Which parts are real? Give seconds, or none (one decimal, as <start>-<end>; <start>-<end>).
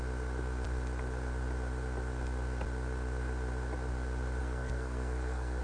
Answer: 0.0-4.4